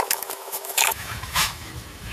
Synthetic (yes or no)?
yes